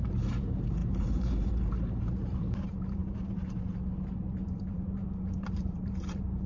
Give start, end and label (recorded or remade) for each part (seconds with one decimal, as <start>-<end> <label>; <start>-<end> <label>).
0.0-6.5 remade